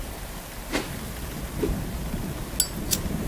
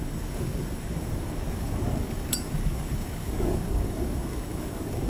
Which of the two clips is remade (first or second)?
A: second